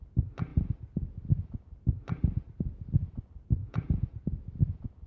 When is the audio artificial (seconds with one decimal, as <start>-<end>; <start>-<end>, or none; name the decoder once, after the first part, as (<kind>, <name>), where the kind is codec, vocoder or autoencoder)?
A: 3.6-4.2 (vocoder, Vocos)